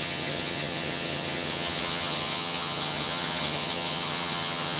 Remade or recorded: remade